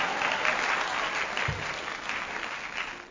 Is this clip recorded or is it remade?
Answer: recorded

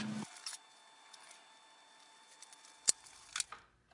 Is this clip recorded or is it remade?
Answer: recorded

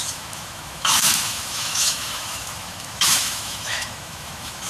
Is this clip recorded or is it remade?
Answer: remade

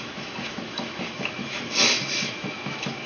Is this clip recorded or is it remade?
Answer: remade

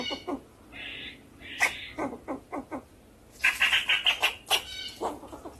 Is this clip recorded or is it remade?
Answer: recorded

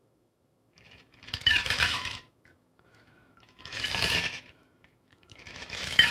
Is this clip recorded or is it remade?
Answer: remade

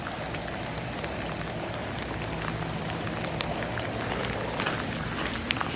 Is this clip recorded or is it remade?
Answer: recorded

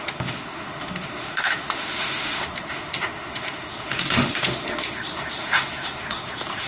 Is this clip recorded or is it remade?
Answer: remade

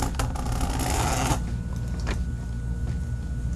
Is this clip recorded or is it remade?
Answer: recorded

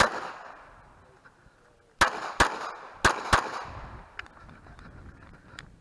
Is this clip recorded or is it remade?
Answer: recorded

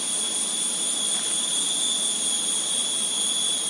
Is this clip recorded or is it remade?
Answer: recorded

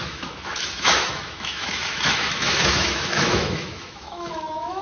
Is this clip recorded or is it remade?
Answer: remade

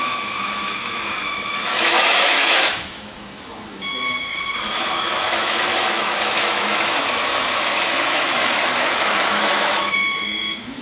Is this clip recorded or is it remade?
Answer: remade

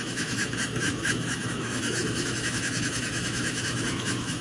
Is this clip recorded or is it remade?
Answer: remade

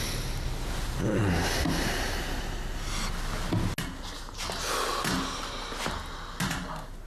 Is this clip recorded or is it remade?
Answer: recorded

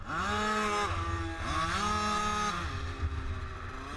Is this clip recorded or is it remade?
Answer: recorded